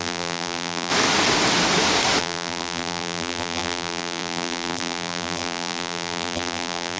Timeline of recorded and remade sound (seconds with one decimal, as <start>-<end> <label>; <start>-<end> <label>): 0.0-0.9 remade; 0.9-2.2 recorded; 2.2-7.0 remade